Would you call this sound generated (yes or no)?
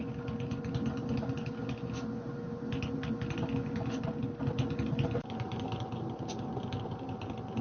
no